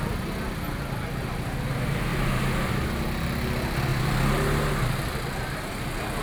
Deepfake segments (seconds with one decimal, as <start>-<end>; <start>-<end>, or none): 2.1-2.7